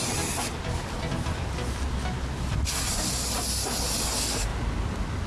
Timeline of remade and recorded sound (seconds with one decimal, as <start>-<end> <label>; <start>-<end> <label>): 0.0-5.3 recorded